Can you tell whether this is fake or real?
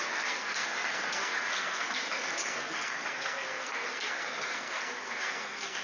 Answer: fake